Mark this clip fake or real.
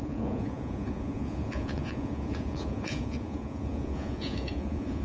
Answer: fake